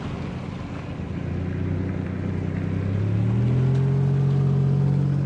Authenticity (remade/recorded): recorded